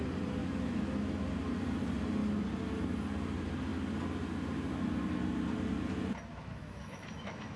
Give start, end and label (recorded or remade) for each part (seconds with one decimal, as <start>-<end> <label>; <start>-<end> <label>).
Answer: 0.0-0.4 recorded; 0.4-1.2 remade; 1.2-6.3 recorded; 6.3-7.6 remade